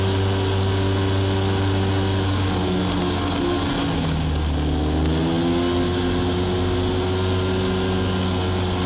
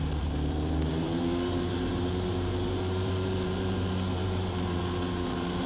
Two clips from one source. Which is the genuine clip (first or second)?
first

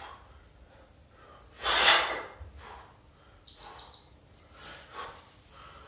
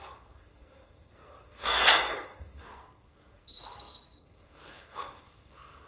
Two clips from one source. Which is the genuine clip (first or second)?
first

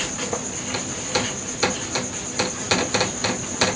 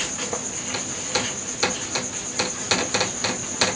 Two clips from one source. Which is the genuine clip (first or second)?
second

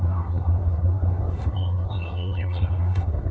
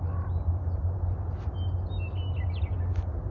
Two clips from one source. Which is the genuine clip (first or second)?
second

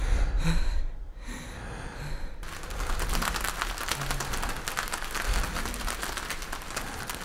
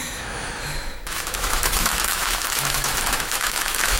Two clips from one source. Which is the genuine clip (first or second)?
first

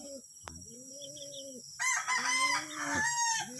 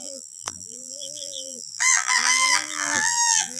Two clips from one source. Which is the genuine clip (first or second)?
first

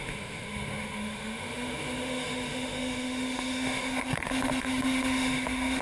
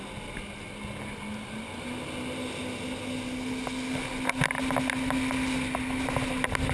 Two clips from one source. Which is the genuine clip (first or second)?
second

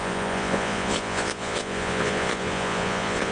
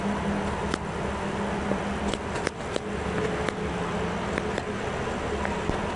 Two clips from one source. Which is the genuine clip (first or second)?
second